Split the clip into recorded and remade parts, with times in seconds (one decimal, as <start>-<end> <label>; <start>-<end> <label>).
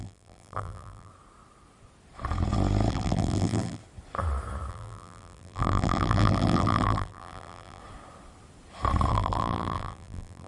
0.0-1.1 remade; 1.1-2.9 recorded; 2.9-3.8 remade; 3.8-4.7 recorded; 4.7-7.8 remade; 7.8-9.1 recorded; 9.1-10.5 remade